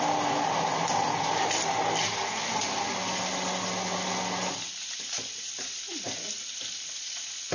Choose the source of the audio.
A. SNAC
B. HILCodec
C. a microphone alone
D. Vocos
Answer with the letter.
C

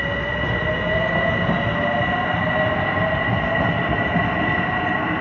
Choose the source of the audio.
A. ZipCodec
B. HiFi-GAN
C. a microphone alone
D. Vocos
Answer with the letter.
C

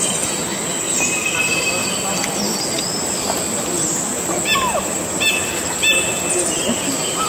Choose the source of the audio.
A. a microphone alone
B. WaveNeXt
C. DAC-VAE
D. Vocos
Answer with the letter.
A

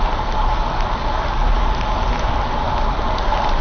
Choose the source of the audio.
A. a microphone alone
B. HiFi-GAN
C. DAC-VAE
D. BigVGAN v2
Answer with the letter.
A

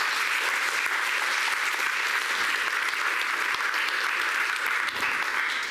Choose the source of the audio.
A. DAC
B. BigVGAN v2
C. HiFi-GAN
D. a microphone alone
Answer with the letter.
D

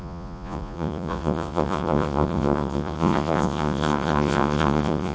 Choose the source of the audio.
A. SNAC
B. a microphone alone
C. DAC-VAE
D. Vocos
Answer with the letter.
D